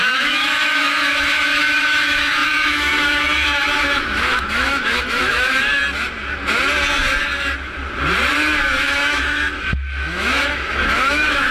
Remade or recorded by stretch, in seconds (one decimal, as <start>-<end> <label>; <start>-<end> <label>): 0.0-5.8 remade; 5.8-8.8 recorded; 8.8-11.5 remade